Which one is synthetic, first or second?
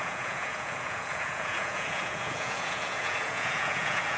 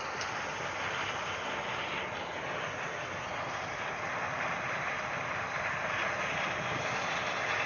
first